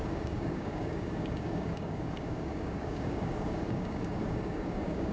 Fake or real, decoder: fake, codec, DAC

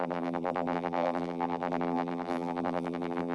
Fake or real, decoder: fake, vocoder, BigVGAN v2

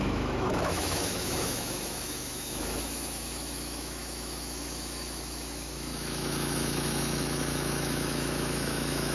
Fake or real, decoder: fake, autoencoder, DAC-VAE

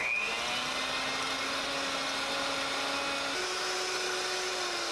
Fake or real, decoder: real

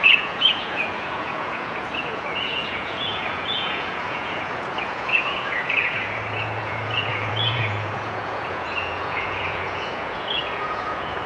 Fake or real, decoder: fake, vocoder, Vocos